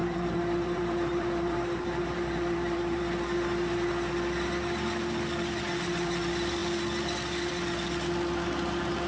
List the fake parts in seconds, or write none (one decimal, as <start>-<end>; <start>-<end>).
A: 0.0-3.0